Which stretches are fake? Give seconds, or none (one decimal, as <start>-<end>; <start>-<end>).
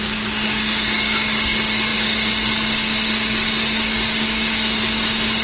0.0-5.4